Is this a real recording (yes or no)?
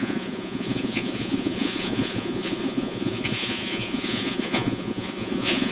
no